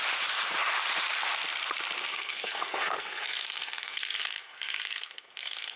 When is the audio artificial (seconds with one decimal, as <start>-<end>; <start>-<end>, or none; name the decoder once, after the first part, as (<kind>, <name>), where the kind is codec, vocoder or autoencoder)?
2.1-5.8 (codec, SNAC)

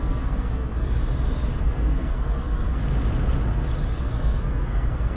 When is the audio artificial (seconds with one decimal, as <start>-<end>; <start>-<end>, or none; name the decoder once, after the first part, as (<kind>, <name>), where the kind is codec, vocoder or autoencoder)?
0.0-1.0 (codec, SNAC); 1.6-2.8; 4.0-5.2

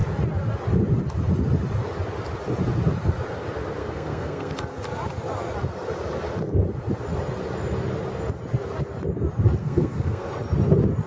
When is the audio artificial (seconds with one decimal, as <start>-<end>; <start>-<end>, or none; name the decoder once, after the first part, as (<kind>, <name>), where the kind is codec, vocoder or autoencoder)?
3.8-4.5 (codec, SNAC); 9.6-10.3

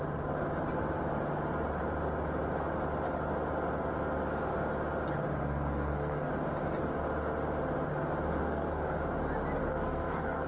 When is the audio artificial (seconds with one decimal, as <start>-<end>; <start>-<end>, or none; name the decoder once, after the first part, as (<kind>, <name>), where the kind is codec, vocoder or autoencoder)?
5.4-6.3 (codec, SNAC); 8.4-9.0; 9.6-10.5

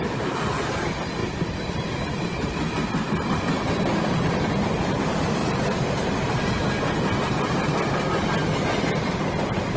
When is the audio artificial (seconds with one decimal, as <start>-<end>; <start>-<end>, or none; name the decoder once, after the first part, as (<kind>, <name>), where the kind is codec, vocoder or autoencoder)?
none

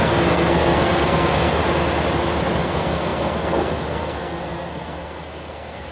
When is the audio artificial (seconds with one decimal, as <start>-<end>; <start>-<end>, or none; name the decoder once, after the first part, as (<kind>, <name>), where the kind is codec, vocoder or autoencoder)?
0.0-1.6 (codec, SNAC); 2.6-5.9

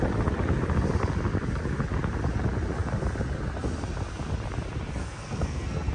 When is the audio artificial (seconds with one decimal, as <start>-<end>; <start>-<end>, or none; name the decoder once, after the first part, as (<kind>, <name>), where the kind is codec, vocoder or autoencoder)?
5.0-5.9 (codec, SNAC)